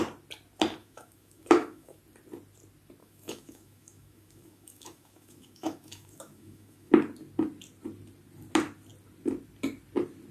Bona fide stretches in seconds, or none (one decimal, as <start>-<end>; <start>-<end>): 0.0-0.8; 2.0-3.0; 6.9-10.3